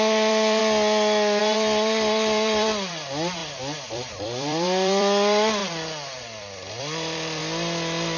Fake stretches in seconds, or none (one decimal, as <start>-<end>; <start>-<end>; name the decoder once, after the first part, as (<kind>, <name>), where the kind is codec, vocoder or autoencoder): 0.0-0.6 (vocoder, BigVGAN v2); 1.4-7.4